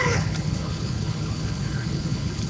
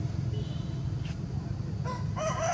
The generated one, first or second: first